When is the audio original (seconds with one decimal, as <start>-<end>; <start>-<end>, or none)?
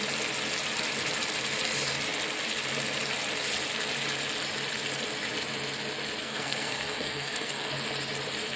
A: 0.0-6.2; 7.7-8.6